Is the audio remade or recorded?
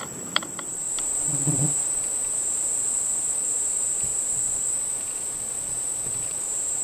remade